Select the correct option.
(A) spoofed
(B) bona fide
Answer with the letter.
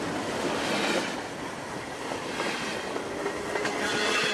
B